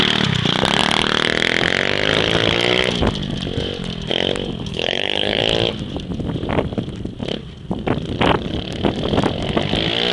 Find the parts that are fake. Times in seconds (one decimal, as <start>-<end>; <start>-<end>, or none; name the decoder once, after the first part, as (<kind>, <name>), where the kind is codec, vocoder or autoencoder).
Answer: 4.7-5.4 (codec, HILCodec)

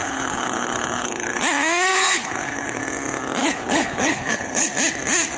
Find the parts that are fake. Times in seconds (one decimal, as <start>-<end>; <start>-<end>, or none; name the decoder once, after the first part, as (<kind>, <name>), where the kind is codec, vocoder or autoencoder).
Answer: 0.0-1.4 (codec, HILCodec); 1.9-2.8; 3.4-4.7

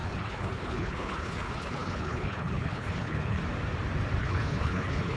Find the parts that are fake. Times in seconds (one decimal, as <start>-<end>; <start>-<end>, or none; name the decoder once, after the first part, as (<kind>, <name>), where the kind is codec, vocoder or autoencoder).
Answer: 0.0-3.4 (codec, HILCodec); 4.2-5.2